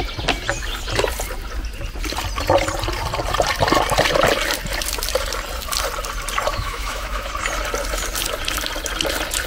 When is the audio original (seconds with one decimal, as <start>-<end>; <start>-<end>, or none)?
0.0-6.5; 7.3-9.5